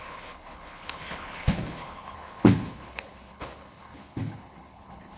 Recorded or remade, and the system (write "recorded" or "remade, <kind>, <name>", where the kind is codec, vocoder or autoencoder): remade, codec, HILCodec